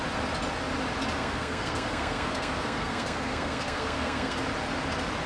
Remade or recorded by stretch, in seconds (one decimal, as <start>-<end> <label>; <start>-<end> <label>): 0.0-1.2 recorded; 1.2-4.4 remade; 4.4-5.3 recorded